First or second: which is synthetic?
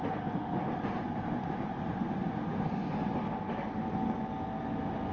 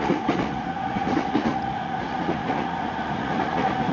second